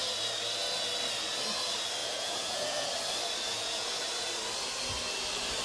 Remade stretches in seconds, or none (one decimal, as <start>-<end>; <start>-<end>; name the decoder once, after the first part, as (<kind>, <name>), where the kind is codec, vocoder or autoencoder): 2.0-2.9 (vocoder, Vocos); 3.5-4.0